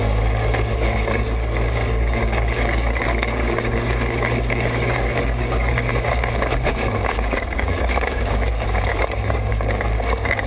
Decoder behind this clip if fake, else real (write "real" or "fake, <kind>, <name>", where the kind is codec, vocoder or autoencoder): fake, codec, DAC